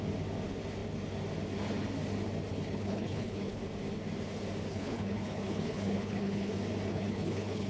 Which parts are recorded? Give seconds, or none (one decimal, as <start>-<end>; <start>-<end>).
0.0-2.5; 3.6-4.7; 6.5-6.9